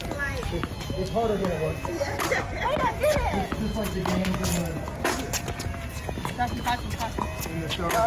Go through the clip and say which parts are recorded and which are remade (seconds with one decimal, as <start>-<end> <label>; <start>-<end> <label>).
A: 0.0-8.1 recorded